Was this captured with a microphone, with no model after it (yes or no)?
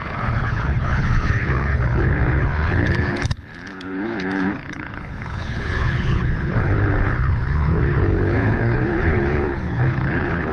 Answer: no